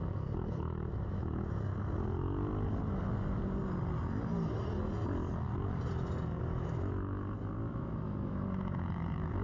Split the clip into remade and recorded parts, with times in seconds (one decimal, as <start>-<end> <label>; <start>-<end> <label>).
0.0-1.7 remade; 1.7-6.4 recorded; 6.4-9.4 remade